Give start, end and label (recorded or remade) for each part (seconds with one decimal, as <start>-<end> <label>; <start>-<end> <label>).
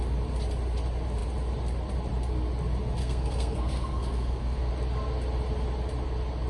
0.0-3.0 recorded; 3.0-4.7 remade; 4.7-6.5 recorded